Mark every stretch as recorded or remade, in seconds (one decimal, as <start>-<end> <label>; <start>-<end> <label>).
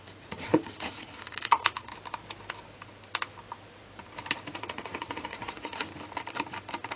0.0-1.9 remade; 1.9-4.6 recorded; 4.6-5.9 remade; 5.9-7.0 recorded